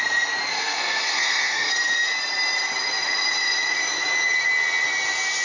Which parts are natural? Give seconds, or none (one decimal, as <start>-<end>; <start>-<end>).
0.0-0.5; 1.7-5.4